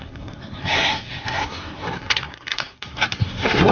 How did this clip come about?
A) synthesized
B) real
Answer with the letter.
A